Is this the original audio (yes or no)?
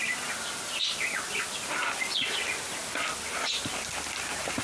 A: yes